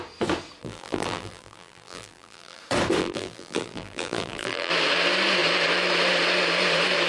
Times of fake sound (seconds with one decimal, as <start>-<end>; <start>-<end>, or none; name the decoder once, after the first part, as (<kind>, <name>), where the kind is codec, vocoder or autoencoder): 0.6-2.6 (vocoder, BigVGAN v2); 3.0-4.7